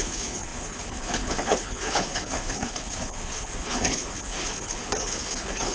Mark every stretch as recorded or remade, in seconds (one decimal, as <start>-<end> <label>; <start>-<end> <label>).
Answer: 0.0-5.7 remade